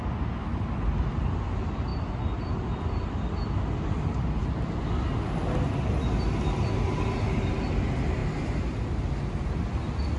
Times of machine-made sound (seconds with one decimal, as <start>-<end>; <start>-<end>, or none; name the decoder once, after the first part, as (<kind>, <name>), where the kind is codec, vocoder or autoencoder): none